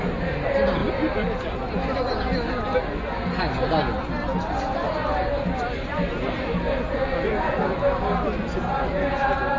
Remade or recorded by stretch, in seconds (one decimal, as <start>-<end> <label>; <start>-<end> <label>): 0.0-9.6 recorded